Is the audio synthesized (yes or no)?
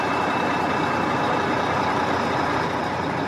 no